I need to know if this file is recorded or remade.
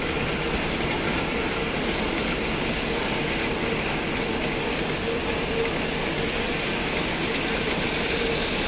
recorded